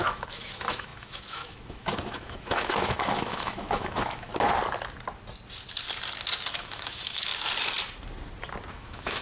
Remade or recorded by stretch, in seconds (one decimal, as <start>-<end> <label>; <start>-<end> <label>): 0.0-4.3 remade; 4.3-6.5 recorded; 6.5-7.3 remade; 7.3-8.7 recorded; 8.7-9.2 remade